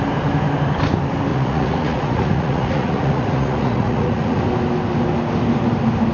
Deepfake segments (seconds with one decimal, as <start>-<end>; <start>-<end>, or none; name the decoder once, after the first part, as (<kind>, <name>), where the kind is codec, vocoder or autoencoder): 1.3-4.4 (vocoder, Vocos)